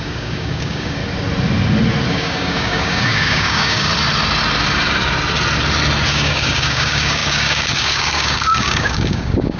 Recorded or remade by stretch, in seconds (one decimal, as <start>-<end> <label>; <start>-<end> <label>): 0.0-1.0 remade; 1.0-2.1 recorded; 2.1-3.9 remade; 3.9-6.1 recorded; 6.1-9.6 remade